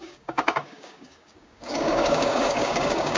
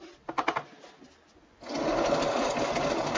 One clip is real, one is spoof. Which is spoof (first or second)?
first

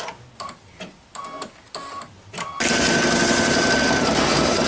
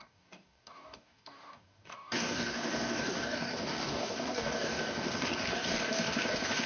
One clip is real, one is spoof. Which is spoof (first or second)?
second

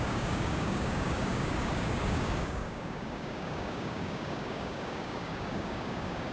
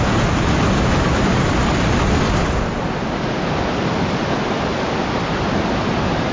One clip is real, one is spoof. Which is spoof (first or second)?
first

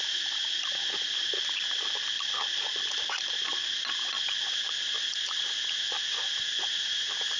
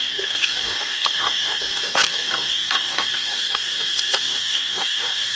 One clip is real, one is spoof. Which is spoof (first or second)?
second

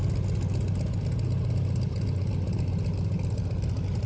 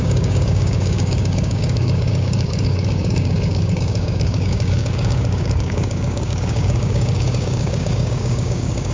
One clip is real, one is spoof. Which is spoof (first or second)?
second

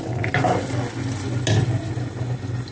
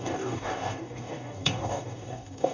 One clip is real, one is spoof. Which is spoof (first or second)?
second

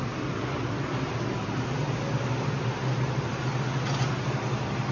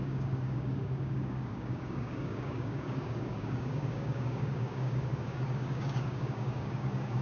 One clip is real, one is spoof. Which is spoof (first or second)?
second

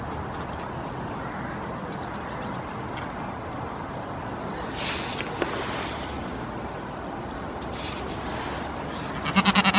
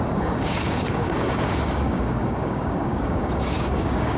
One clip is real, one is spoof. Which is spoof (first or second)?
second